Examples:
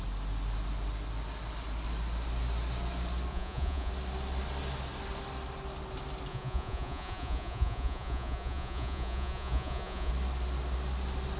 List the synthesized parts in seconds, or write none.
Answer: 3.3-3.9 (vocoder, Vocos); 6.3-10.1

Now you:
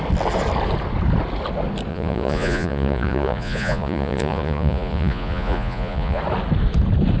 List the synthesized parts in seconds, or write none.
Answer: 1.9-6.2 (vocoder, Vocos)